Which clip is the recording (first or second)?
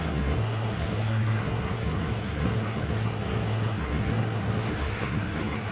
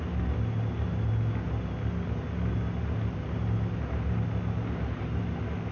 second